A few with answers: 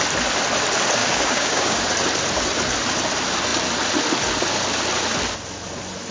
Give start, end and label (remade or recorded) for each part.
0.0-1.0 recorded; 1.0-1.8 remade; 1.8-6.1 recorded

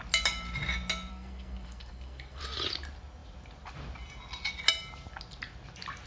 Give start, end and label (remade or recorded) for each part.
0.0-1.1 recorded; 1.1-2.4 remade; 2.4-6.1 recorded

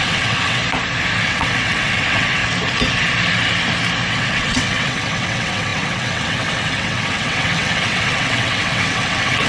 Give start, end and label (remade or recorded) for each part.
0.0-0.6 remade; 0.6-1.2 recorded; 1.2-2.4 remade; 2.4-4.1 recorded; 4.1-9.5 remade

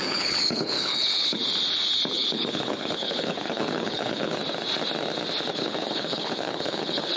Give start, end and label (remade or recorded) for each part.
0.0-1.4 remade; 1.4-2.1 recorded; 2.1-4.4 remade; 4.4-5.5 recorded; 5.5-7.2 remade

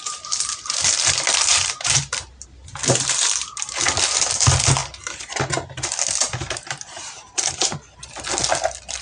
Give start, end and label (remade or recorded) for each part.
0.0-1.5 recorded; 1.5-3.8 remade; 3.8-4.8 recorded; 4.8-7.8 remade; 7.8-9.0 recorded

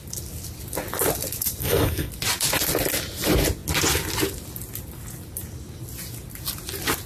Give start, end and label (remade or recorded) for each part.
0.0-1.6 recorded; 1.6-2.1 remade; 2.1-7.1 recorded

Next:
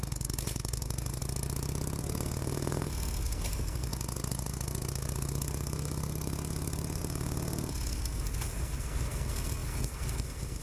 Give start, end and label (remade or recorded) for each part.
0.0-1.2 remade; 1.2-2.0 recorded; 2.0-10.6 remade